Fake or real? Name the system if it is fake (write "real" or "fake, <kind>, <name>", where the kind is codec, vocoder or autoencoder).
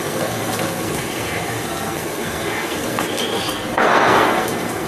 fake, codec, SNAC